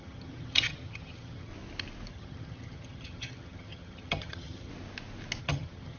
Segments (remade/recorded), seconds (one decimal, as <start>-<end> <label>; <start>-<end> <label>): 0.0-1.5 remade; 1.5-2.1 recorded; 2.1-4.7 remade; 4.7-5.4 recorded; 5.4-6.0 remade